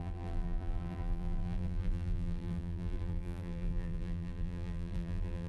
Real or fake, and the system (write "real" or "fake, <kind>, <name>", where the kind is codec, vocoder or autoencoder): fake, vocoder, BigVGAN v2